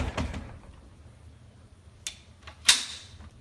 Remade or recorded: recorded